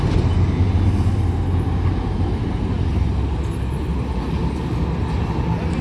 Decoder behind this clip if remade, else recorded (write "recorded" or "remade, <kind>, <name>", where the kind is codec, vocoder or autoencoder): recorded